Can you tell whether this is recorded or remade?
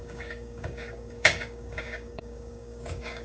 remade